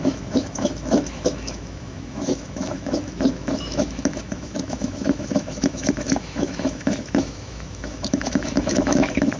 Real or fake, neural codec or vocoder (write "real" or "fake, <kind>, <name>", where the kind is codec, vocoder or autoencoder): fake, autoencoder, DAC-VAE